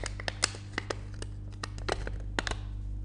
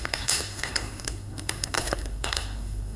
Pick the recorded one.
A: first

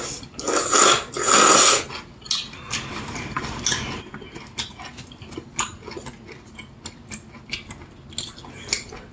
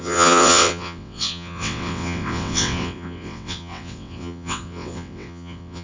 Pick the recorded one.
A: first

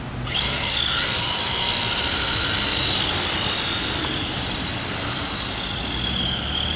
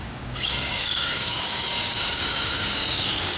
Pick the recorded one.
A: first